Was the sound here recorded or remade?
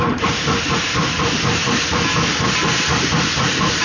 recorded